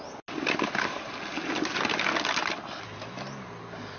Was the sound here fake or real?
real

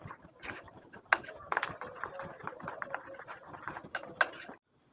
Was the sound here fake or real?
real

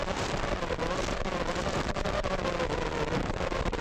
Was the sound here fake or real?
fake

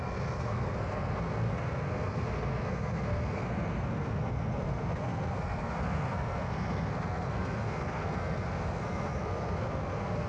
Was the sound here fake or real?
fake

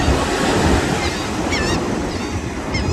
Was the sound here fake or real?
real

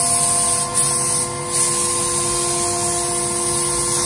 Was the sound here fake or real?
real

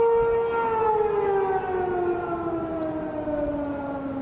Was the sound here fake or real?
real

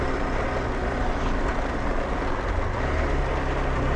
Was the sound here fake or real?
real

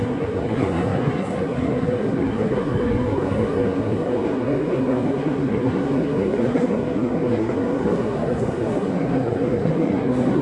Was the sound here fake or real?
fake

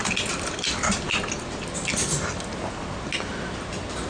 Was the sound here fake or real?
real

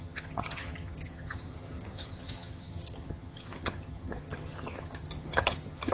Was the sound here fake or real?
fake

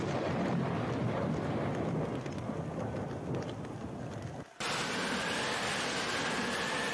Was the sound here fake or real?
real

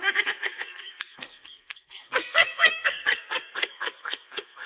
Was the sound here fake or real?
fake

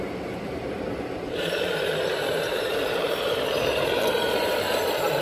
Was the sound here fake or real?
fake